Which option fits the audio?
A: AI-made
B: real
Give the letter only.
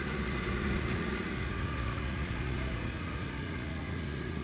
A